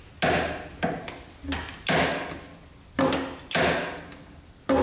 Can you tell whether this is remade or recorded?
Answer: recorded